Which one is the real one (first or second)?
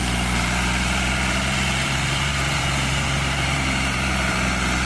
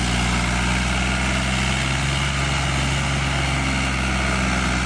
second